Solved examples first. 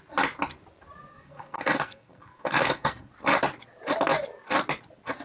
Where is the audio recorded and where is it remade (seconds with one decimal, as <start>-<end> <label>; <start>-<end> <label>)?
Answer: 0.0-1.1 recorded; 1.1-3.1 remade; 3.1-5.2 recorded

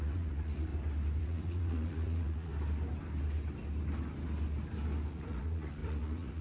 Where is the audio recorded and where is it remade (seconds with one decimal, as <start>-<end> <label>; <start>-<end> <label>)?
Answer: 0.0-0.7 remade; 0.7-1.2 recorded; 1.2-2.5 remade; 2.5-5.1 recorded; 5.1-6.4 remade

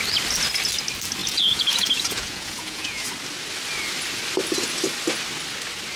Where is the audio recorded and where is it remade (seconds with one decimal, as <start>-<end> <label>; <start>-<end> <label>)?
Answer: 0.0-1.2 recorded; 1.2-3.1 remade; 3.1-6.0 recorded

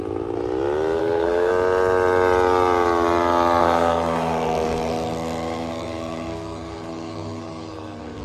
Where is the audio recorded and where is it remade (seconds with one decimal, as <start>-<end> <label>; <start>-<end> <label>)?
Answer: 0.0-1.0 recorded; 1.0-1.5 remade; 1.5-3.6 recorded; 3.6-8.2 remade

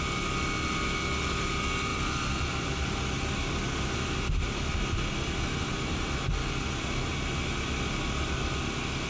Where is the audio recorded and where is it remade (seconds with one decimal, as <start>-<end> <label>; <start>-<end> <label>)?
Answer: 0.0-1.9 recorded; 1.9-2.7 remade; 2.7-9.1 recorded

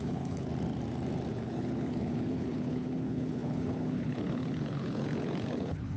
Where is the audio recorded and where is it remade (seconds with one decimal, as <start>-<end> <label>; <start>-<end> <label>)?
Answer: 0.0-0.5 remade; 0.5-1.3 recorded; 1.3-6.0 remade

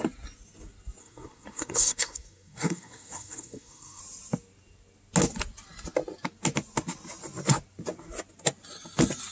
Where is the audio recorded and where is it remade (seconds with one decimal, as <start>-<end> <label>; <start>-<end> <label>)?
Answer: 0.0-1.0 recorded; 1.0-4.0 remade; 4.0-9.3 recorded

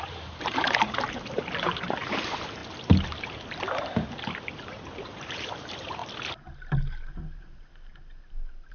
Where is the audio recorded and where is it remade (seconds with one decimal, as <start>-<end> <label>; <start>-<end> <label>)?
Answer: 0.0-2.6 remade; 2.6-4.7 recorded; 4.7-6.0 remade; 6.0-6.8 recorded; 6.8-7.9 remade; 7.9-8.7 recorded